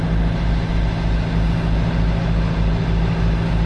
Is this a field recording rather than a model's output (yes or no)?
yes